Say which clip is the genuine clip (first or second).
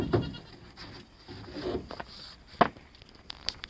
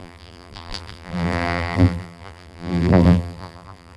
first